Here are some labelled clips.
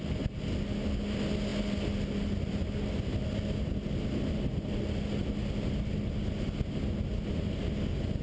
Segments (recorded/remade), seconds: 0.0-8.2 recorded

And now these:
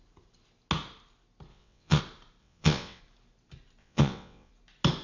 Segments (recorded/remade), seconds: 0.0-1.5 recorded; 1.5-2.0 remade; 2.0-2.4 recorded; 2.4-3.0 remade; 3.0-3.8 recorded; 3.8-4.5 remade; 4.5-5.0 recorded

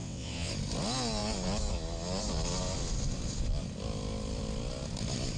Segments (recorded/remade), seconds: 0.0-0.5 remade; 0.5-5.4 recorded

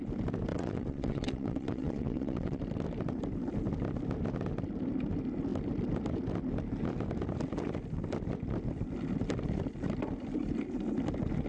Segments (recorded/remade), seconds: 0.0-0.5 recorded; 0.5-2.6 remade; 2.6-11.5 recorded

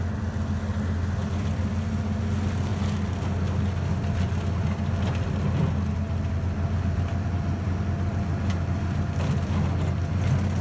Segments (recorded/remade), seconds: 0.0-10.6 recorded

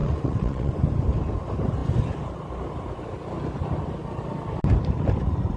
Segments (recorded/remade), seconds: 0.0-0.7 remade; 0.7-5.6 recorded